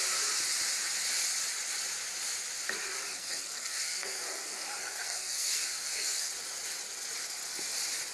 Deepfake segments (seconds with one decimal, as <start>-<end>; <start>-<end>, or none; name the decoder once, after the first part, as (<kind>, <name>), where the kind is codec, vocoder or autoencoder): 3.1-6.3 (codec, SNAC)